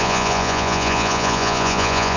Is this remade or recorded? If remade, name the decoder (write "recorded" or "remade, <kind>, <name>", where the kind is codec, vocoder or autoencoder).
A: remade, vocoder, Vocos